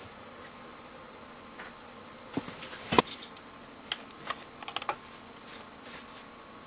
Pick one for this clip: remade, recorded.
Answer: recorded